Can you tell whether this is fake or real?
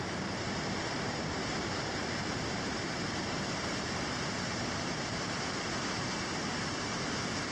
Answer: fake